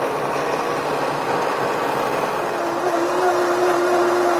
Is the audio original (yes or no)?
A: yes